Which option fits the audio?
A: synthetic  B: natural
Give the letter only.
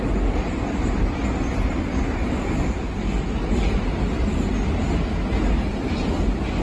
B